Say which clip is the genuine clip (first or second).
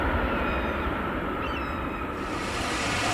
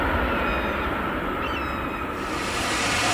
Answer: second